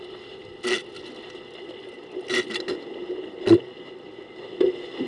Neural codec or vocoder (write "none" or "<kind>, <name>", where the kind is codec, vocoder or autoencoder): none